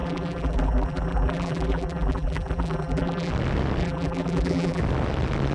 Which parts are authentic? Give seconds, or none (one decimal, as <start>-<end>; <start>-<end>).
3.3-3.8; 4.8-5.5